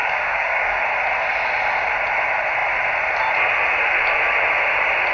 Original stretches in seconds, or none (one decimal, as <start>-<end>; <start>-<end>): 0.8-5.1